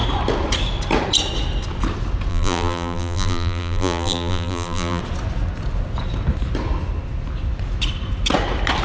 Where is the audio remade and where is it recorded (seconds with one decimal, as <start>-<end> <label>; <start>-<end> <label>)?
0.0-2.3 recorded; 2.3-5.0 remade; 5.0-8.8 recorded